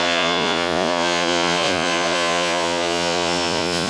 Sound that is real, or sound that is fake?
fake